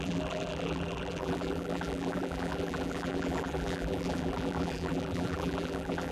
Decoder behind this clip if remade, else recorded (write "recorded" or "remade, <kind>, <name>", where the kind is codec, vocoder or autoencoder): remade, vocoder, BigVGAN v2